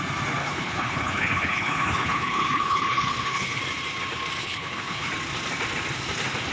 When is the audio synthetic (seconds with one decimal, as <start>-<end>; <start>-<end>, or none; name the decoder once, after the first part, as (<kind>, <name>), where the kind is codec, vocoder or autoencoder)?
0.4-3.6 (codec, HILCodec); 4.4-5.1